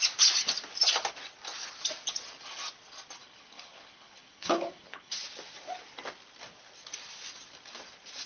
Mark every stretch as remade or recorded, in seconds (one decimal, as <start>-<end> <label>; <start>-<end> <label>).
0.0-3.2 recorded; 3.2-5.2 remade; 5.2-8.3 recorded